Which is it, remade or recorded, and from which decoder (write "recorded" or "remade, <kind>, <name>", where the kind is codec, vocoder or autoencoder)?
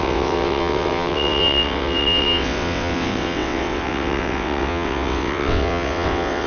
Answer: remade, vocoder, WaveNeXt